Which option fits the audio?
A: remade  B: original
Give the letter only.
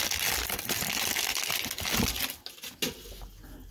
B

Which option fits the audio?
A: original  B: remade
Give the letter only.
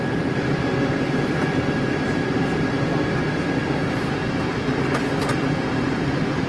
A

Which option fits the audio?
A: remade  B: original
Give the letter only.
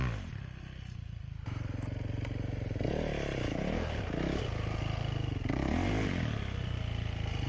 B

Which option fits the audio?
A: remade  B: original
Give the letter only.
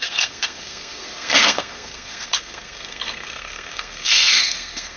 A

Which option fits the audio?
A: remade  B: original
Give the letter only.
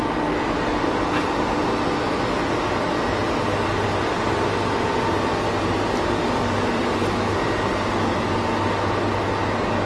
B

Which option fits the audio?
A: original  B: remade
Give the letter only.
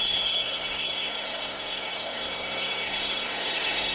B